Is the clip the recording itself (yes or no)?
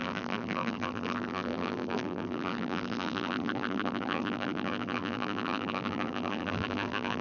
no